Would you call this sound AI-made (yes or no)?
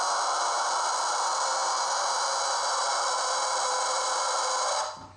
no